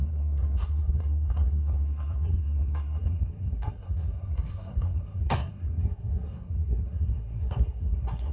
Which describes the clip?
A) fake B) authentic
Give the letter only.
A